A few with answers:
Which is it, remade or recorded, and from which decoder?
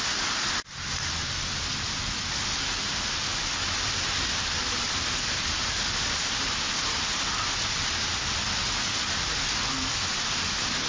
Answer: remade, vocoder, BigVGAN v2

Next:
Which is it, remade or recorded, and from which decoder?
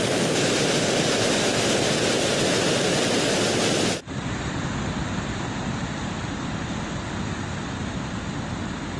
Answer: recorded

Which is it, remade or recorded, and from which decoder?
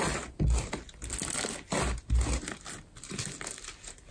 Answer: recorded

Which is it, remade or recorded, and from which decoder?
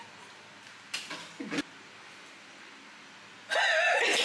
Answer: recorded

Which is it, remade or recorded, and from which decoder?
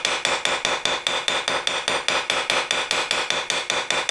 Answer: recorded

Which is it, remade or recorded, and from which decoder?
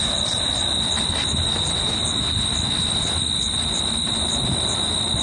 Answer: recorded